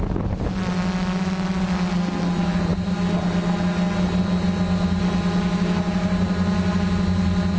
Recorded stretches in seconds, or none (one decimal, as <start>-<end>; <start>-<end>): 0.0-7.6